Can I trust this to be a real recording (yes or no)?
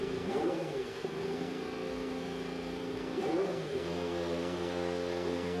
no